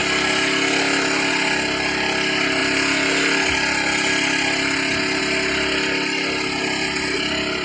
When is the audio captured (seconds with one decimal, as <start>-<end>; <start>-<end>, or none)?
0.0-7.6

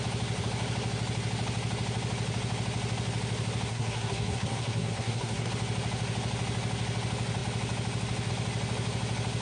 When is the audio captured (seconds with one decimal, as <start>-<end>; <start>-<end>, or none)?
0.0-3.7; 5.5-9.4

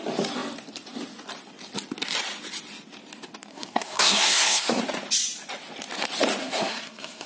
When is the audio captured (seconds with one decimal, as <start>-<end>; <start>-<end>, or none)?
0.0-3.5; 4.8-6.4

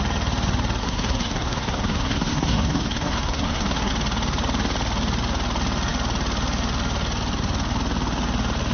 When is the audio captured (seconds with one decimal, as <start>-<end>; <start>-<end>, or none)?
0.0-0.8; 3.9-8.7

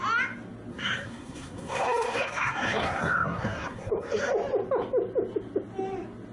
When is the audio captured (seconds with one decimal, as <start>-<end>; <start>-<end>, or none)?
0.0-0.7; 4.3-6.3